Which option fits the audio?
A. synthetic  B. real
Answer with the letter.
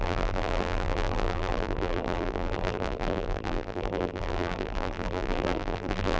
A